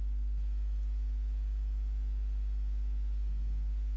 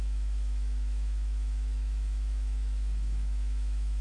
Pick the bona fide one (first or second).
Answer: first